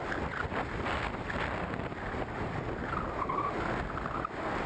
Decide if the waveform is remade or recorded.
recorded